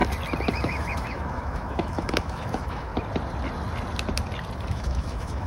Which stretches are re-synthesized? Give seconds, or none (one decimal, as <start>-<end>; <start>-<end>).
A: 0.5-2.9; 4.7-5.5